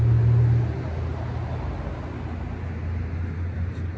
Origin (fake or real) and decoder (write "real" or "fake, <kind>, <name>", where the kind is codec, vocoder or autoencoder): real